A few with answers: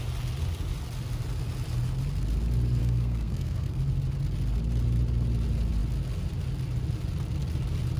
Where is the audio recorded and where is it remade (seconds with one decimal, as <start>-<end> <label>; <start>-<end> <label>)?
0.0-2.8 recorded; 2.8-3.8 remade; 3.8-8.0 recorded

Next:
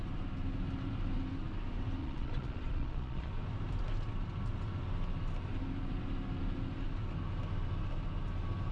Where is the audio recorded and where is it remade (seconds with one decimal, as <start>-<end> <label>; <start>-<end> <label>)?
0.0-2.0 recorded; 2.0-3.3 remade; 3.3-8.7 recorded

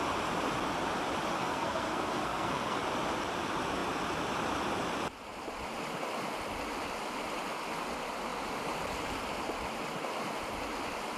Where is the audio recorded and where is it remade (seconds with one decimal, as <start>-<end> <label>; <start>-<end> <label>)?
0.0-1.3 recorded; 1.3-2.8 remade; 2.8-11.2 recorded